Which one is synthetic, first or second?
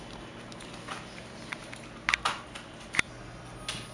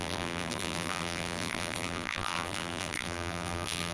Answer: second